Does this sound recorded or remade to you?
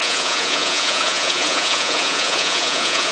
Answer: remade